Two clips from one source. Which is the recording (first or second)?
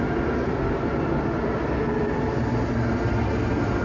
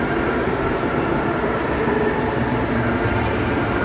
first